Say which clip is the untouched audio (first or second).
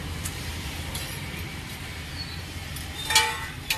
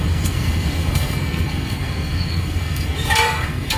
first